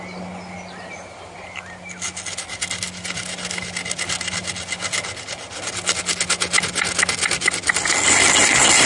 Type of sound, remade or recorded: recorded